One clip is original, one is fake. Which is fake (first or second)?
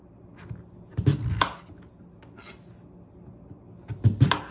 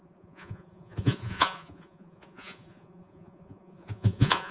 second